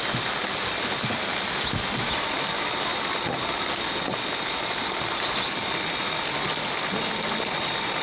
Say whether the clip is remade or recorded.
recorded